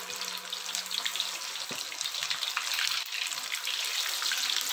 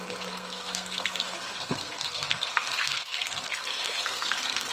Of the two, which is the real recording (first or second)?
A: first